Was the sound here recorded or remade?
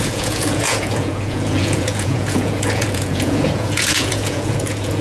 remade